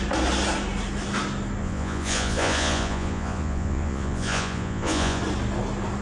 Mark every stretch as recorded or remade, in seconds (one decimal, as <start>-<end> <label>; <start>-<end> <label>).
0.0-1.6 recorded; 1.6-5.2 remade; 5.2-6.0 recorded